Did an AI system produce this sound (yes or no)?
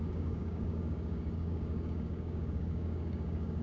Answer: yes